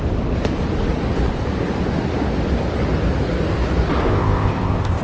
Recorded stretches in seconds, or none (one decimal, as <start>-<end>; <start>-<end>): 0.0-4.1